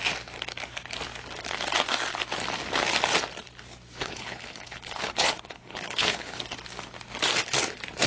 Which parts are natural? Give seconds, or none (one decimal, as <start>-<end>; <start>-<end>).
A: 0.0-4.0; 6.4-8.1